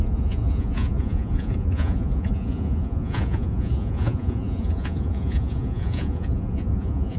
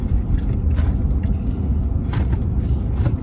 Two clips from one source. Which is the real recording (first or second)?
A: second